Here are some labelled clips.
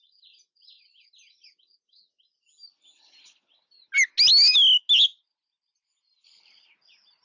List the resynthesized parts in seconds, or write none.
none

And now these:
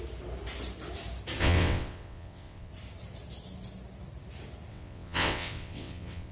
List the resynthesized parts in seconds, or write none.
1.4-2.7 (vocoder, WaveNeXt); 4.7-6.3

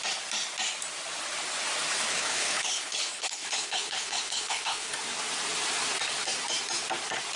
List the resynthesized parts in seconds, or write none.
2.1-4.9 (codec, HILCodec)

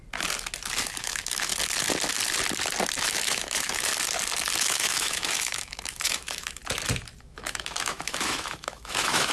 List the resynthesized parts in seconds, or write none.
1.0-1.5 (autoencoder, DAC-VAE); 3.0-3.9; 4.6-6.6; 7.2-9.3

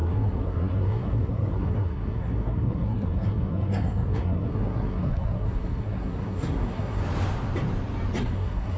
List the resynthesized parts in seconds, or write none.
0.0-7.0 (codec, SNAC); 8.2-8.8

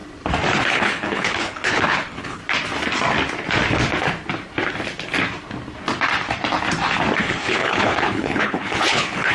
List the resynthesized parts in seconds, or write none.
0.7-2.4 (codec, HILCodec); 7.2-9.3